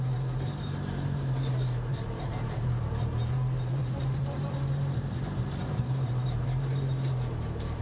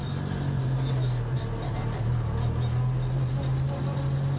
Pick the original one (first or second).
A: second